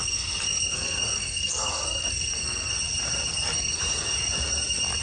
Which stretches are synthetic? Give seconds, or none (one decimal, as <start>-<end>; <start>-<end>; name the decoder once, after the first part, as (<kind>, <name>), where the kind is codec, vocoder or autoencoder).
0.0-2.7 (codec, SNAC); 3.3-3.8